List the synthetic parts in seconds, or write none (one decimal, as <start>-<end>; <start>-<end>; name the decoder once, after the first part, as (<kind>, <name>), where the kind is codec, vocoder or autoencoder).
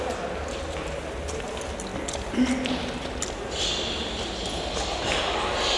none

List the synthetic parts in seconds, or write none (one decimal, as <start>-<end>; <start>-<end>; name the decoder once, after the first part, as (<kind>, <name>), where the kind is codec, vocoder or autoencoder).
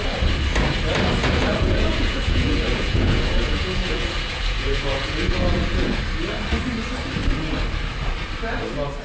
1.2-6.0 (vocoder, Vocos)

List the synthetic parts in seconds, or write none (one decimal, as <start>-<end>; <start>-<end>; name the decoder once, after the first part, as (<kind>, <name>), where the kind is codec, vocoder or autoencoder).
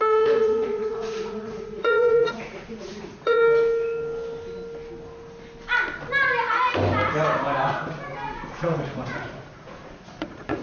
0.0-3.4 (vocoder, Vocos); 8.5-10.6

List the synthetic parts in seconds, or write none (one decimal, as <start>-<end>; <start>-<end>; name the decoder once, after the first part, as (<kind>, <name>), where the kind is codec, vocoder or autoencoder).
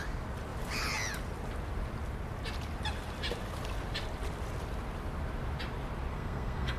6.1-6.8 (codec, SNAC)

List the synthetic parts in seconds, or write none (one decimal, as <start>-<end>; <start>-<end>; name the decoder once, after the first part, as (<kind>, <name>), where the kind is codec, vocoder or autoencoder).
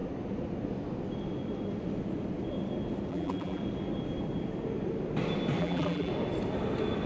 3.1-3.6 (vocoder, BigVGAN v2); 5.6-6.1